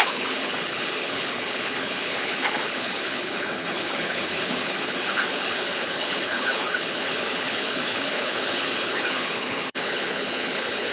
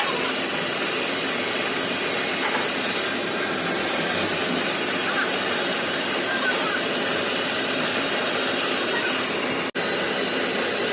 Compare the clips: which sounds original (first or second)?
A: second